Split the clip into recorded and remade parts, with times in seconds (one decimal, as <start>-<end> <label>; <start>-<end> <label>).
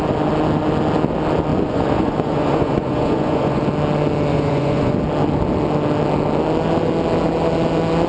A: 0.0-1.5 recorded; 1.5-3.6 remade; 3.6-4.3 recorded; 4.3-4.9 remade; 4.9-8.1 recorded